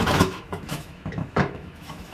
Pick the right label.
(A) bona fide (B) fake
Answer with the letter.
B